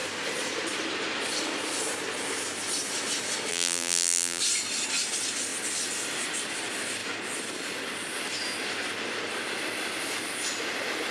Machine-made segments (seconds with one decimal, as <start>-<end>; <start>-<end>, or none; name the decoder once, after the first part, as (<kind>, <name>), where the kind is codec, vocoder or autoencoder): 3.5-4.4 (vocoder, BigVGAN v2)